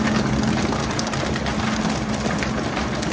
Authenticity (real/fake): real